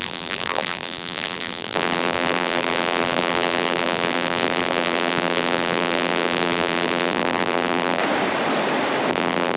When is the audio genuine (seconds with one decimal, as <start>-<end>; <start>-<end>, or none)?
8.0-9.1